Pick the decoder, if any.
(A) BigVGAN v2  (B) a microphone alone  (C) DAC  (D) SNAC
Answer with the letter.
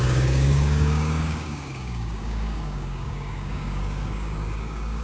C